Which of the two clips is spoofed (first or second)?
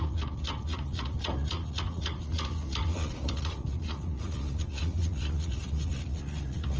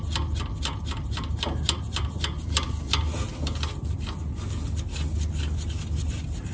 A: first